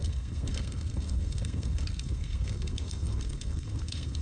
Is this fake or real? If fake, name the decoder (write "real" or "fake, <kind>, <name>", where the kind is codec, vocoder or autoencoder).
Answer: fake, codec, SNAC